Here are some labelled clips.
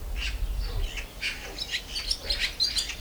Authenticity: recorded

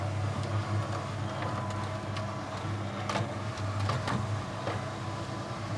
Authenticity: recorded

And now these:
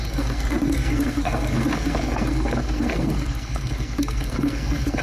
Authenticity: remade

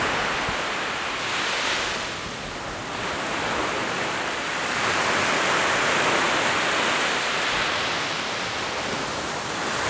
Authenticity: recorded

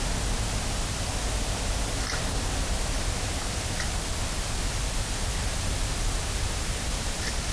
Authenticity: recorded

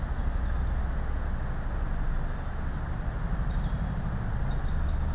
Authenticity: recorded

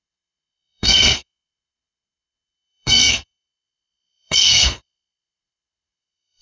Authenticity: remade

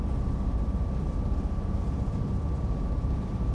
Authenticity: remade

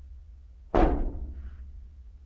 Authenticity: remade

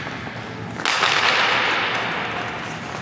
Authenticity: recorded